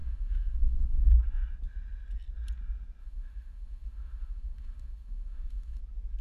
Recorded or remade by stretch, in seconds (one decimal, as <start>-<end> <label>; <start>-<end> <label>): 0.0-1.1 remade; 1.1-3.0 recorded; 3.0-5.8 remade; 5.8-6.2 recorded